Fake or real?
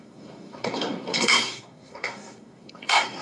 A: fake